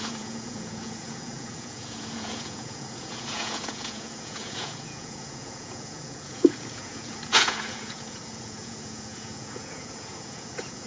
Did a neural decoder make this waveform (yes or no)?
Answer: yes